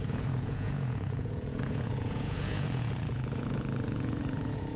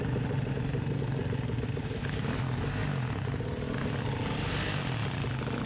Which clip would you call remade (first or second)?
first